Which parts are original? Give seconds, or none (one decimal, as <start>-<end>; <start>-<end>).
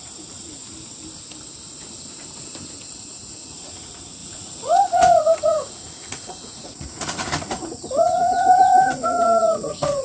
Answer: 0.6-2.9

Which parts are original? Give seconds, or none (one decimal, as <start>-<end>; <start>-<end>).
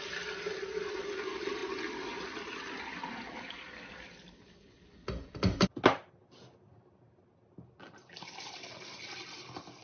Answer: 0.0-9.8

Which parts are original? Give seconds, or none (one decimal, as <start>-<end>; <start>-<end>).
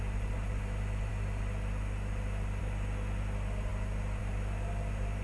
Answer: 0.0-5.2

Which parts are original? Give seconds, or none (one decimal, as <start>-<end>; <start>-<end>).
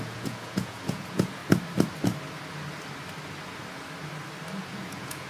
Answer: 1.4-4.6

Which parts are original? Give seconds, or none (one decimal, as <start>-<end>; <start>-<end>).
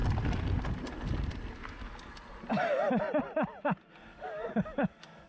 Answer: 0.0-4.1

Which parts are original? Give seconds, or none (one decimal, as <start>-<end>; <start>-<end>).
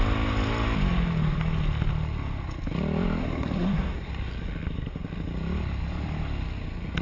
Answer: 0.0-3.2; 4.1-7.0